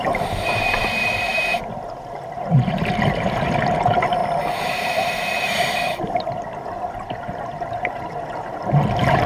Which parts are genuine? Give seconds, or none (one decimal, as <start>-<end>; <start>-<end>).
1.5-2.9; 4.2-6.9